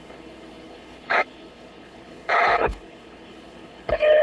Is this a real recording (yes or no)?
no